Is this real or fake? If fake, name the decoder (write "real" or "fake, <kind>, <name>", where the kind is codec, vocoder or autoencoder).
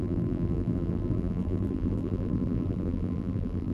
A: fake, vocoder, BigVGAN v2